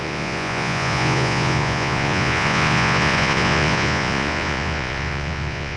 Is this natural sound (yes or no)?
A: no